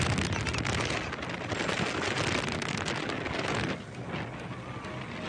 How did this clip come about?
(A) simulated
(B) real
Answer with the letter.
B